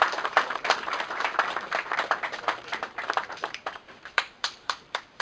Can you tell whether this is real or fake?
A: fake